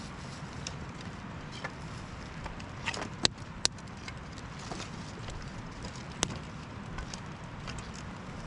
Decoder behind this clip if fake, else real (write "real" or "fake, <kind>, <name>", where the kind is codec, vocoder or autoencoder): real